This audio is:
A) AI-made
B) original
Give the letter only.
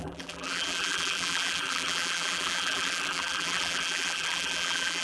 A